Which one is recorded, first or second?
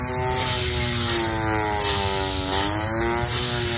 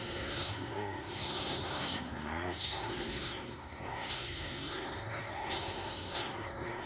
first